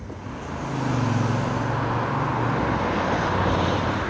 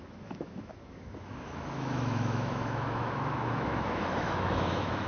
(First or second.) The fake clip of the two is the second